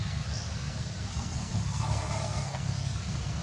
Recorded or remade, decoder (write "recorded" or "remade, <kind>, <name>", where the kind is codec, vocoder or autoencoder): remade, codec, SNAC